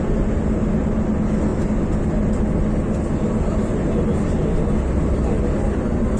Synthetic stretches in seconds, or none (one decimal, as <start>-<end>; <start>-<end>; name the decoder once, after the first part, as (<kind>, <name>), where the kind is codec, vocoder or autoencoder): none